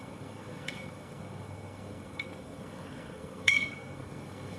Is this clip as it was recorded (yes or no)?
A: no